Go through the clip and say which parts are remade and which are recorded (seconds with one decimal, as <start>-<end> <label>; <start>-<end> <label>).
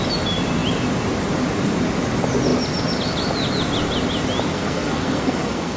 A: 0.0-4.5 recorded; 4.5-5.8 remade